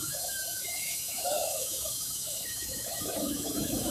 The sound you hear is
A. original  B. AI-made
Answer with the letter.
B